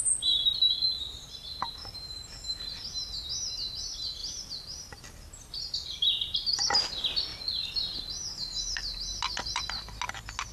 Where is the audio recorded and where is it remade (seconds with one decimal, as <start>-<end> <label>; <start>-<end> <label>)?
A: 0.0-0.9 recorded; 0.9-2.8 remade; 2.8-4.2 recorded; 4.2-5.6 remade; 5.6-7.3 recorded; 7.3-9.6 remade; 9.6-10.5 recorded